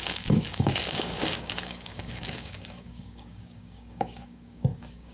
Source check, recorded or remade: remade